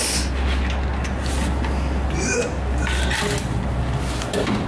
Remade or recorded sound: recorded